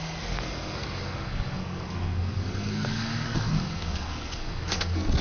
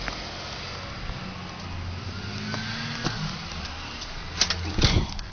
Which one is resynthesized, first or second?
first